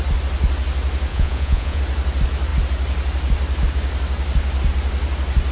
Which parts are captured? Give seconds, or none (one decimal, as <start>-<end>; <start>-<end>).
0.0-1.1; 1.8-5.5